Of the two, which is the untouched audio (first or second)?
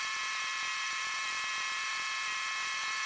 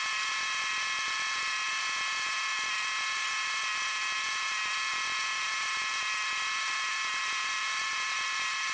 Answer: first